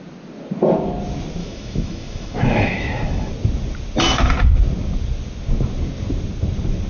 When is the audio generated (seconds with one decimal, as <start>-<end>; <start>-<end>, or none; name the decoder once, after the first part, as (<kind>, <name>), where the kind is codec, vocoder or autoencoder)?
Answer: 1.4-3.3 (autoencoder, DAC-VAE)